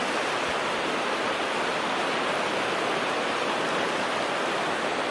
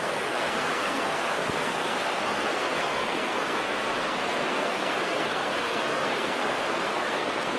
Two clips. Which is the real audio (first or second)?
first